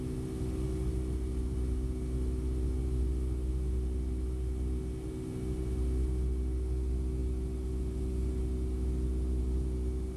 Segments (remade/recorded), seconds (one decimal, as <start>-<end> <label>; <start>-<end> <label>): 0.0-10.2 recorded